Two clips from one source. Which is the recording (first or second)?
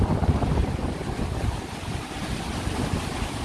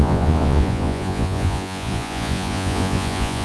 first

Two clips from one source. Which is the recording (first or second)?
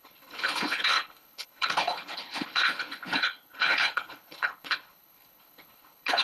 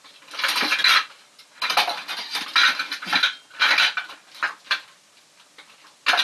second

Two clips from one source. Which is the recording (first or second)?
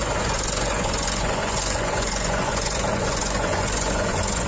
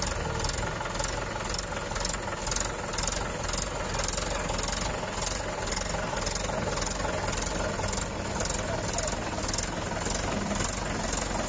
second